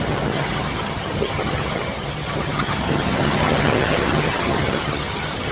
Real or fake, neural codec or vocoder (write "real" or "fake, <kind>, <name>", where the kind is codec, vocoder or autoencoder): fake, vocoder, HiFi-GAN